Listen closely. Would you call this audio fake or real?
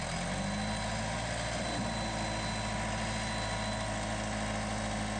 real